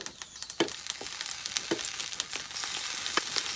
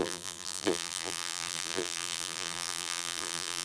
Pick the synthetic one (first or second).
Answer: second